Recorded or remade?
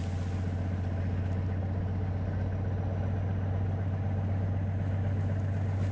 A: recorded